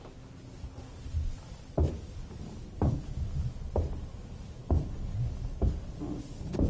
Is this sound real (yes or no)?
yes